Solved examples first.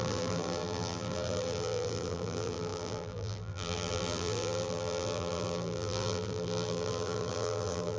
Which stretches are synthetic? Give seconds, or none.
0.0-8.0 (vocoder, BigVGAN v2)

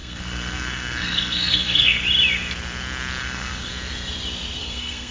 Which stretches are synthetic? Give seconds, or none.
0.0-2.0 (codec, SNAC); 3.2-3.7; 4.6-5.1

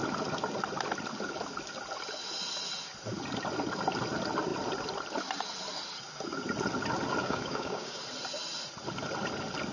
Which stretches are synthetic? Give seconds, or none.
7.2-8.0 (codec, DAC)

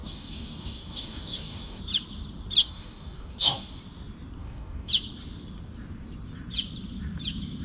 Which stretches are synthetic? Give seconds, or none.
0.0-1.8 (codec, DAC); 2.6-3.8; 4.4-4.9

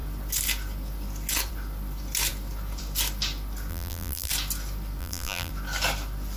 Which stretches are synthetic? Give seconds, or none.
3.7-4.3 (vocoder, BigVGAN v2); 5.0-5.5

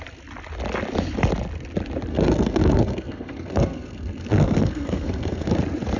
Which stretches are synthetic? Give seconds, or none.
2.1-5.6 (codec, SNAC)

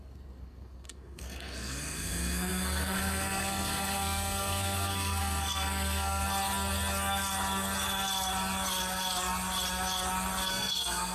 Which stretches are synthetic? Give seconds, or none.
0.0-6.2 (codec, SNAC); 10.5-11.1

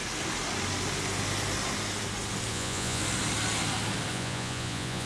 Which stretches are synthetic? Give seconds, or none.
2.5-3.0 (vocoder, Vocos); 4.1-5.1